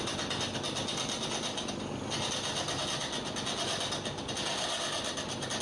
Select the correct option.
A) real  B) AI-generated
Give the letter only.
A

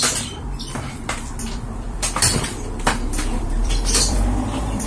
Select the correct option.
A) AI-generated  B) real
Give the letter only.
A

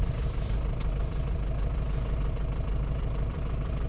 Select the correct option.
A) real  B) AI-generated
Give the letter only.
B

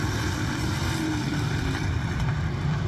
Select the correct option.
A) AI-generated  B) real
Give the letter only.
A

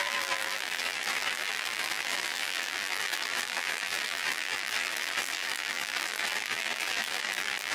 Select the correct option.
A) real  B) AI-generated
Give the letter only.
B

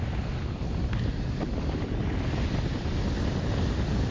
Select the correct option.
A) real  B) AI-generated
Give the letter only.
A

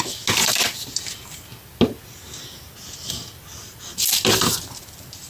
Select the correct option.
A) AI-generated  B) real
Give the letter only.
B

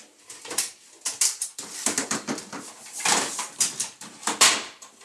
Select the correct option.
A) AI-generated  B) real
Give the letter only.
A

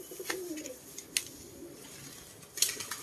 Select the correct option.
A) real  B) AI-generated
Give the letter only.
A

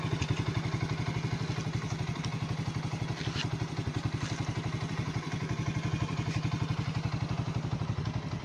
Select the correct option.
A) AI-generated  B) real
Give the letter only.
B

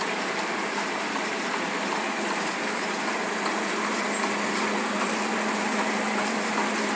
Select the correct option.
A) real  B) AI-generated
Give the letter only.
B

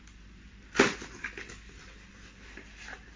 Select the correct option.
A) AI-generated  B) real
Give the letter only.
A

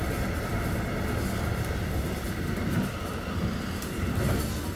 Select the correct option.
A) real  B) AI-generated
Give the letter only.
A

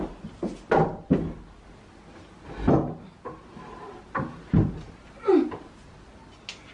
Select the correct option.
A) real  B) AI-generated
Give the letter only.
A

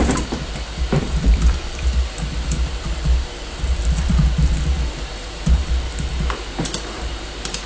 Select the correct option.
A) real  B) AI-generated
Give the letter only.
B